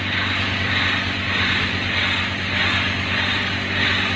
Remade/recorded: recorded